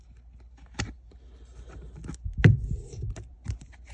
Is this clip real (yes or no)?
yes